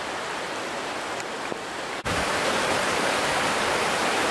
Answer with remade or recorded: remade